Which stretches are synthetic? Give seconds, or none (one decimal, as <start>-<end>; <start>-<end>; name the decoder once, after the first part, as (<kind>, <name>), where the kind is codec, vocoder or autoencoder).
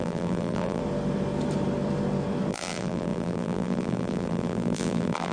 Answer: 0.0-0.8 (vocoder, BigVGAN v2); 2.5-5.3